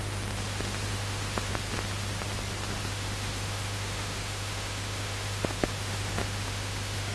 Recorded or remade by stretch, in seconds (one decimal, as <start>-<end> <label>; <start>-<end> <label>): 0.0-0.9 recorded; 0.9-1.5 remade; 1.5-2.8 recorded; 2.8-7.1 remade